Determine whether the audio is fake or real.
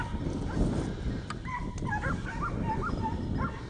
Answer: real